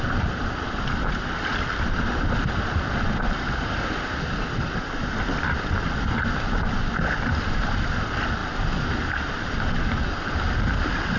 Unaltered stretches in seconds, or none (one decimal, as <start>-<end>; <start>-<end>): 0.0-11.2